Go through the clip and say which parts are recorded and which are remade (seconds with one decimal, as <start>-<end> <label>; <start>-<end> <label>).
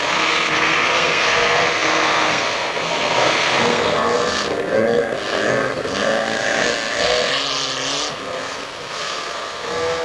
0.0-7.3 remade; 7.3-8.1 recorded; 8.1-10.0 remade